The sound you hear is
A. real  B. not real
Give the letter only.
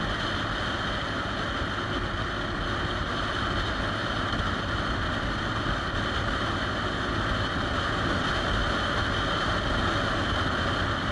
A